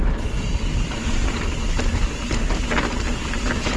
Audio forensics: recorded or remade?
recorded